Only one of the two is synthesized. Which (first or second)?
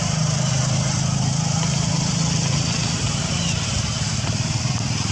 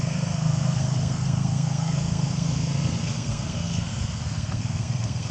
second